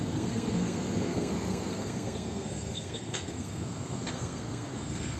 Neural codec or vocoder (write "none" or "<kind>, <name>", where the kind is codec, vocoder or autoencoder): codec, SNAC